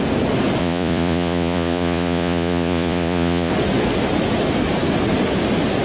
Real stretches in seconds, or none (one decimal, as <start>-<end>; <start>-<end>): 0.0-0.6; 3.5-5.8